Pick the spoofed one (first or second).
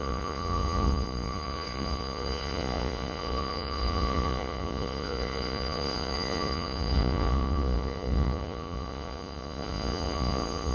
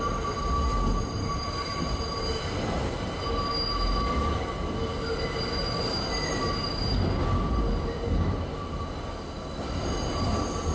first